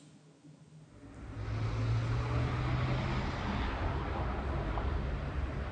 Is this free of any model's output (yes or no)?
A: yes